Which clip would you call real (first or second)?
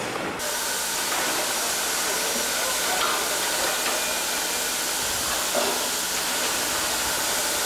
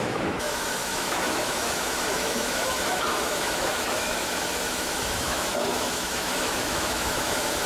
first